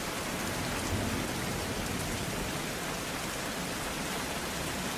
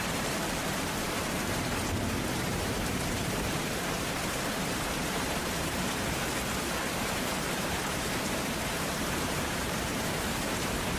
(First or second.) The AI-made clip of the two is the second